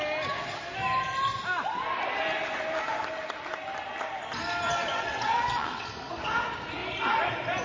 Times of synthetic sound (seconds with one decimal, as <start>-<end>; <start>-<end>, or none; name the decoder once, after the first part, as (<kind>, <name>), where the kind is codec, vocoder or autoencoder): 4.9-5.9 (vocoder, WaveNeXt)